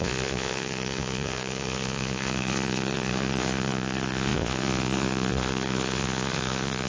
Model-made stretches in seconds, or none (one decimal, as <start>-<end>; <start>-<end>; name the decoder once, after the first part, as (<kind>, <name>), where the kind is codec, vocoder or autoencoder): 0.0-6.9 (vocoder, Vocos)